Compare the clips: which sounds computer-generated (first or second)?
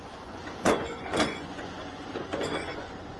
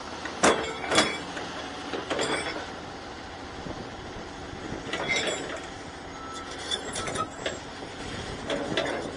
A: first